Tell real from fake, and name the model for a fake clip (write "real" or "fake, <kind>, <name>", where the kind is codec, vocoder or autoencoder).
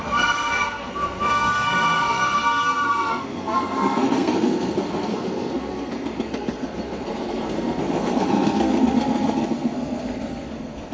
fake, codec, SNAC